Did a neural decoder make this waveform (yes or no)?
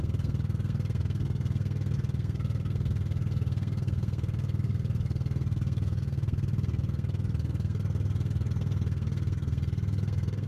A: yes